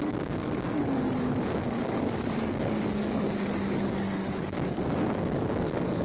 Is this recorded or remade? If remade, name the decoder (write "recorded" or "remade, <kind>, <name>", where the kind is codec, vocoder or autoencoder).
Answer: remade, codec, DAC